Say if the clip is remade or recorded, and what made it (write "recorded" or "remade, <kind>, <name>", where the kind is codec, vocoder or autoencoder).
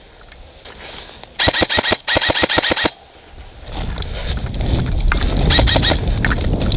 recorded